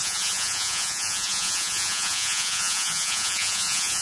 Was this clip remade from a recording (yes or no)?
yes